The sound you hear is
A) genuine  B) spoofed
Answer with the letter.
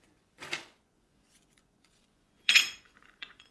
B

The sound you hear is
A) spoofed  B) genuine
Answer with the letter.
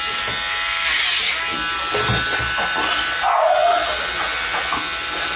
B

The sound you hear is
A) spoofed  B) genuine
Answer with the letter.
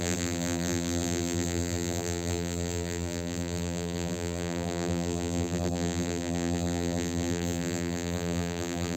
A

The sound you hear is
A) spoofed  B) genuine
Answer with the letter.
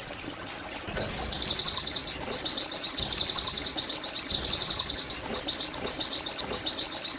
B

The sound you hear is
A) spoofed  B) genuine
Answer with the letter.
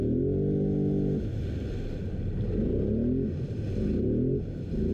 B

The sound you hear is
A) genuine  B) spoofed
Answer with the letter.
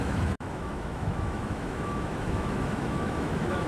B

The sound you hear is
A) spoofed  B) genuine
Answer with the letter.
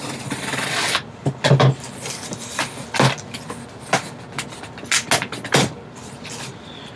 B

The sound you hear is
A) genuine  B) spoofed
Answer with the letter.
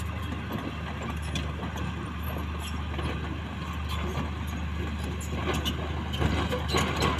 A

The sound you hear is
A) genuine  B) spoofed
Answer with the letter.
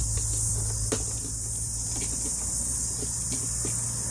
A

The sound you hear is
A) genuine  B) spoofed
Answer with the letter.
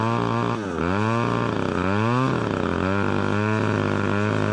A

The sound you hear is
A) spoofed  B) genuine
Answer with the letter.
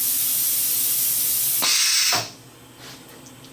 B